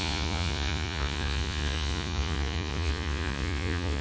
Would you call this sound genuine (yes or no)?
no